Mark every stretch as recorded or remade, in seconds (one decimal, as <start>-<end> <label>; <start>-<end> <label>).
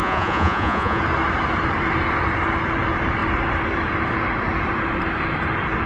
0.0-1.0 remade; 1.0-5.9 recorded